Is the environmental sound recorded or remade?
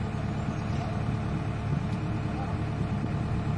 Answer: recorded